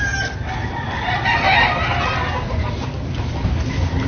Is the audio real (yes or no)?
yes